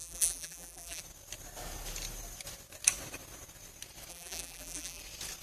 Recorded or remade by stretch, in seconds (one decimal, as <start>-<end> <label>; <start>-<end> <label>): 0.0-1.0 remade; 1.0-4.1 recorded; 4.1-5.0 remade; 5.0-5.4 recorded